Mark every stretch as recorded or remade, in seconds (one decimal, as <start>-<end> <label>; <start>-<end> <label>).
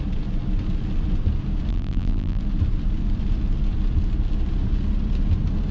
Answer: 0.0-1.7 recorded; 1.7-2.4 remade; 2.4-5.7 recorded